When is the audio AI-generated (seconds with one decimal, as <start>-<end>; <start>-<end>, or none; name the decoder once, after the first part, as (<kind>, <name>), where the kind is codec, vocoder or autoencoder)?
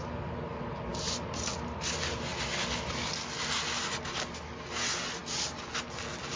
none